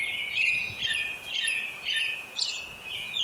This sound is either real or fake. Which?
fake